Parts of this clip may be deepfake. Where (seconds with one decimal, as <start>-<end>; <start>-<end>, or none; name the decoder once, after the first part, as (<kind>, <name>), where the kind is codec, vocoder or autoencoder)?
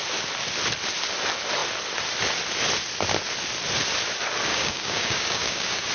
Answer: 4.5-5.9 (codec, DAC)